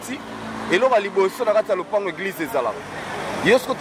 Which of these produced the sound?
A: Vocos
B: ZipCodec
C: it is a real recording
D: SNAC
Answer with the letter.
C